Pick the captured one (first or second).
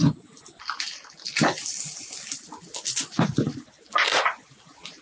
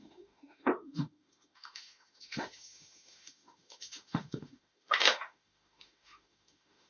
first